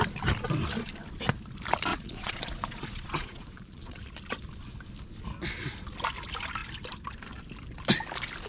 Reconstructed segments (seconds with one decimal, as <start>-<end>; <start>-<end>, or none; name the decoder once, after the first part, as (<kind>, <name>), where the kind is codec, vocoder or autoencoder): 1.9-4.0 (vocoder, Vocos)